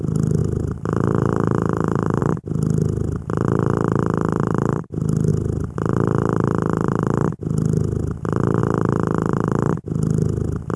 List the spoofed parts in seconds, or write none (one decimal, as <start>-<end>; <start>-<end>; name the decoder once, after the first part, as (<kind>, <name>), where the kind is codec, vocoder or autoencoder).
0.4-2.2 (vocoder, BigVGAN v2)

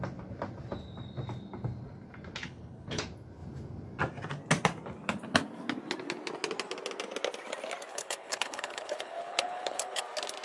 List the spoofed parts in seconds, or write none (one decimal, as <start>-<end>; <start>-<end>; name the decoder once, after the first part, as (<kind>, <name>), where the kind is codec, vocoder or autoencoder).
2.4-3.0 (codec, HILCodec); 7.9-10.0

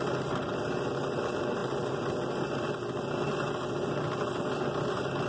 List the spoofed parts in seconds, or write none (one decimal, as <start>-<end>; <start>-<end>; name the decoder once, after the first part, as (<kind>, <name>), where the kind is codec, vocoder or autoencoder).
none